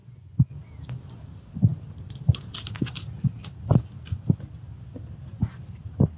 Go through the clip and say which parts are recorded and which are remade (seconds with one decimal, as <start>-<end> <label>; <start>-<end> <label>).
0.0-0.6 remade; 0.6-6.2 recorded